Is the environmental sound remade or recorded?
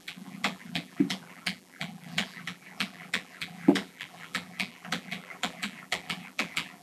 remade